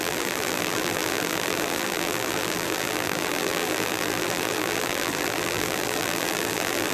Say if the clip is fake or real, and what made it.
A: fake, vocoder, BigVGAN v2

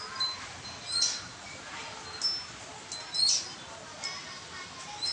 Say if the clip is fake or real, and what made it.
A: real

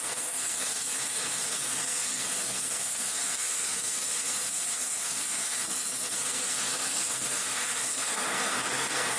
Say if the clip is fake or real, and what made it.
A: fake, codec, SNAC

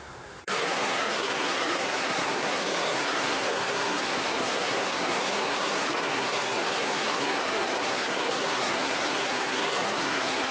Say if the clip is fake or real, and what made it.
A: fake, codec, SNAC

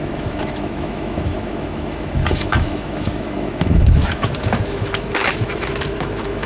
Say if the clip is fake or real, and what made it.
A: fake, autoencoder, DAC-VAE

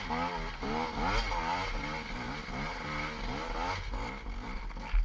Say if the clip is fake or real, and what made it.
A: real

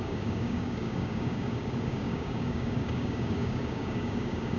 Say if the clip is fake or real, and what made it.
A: fake, codec, DAC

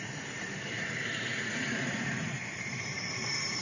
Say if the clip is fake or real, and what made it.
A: fake, vocoder, BigVGAN v2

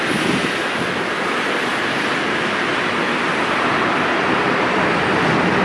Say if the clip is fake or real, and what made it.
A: real